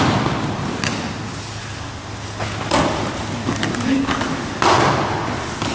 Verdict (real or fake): real